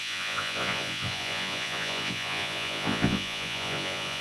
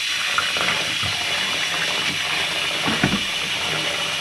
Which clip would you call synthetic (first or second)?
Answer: first